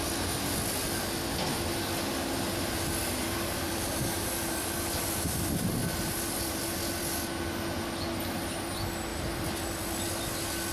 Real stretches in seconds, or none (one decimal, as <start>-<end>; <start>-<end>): 0.0-3.0; 6.6-9.1; 10.1-10.7